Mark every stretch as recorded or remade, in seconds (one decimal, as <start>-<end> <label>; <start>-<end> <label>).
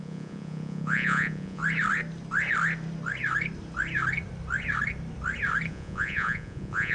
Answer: 0.0-1.6 remade; 1.6-5.7 recorded; 5.7-6.9 remade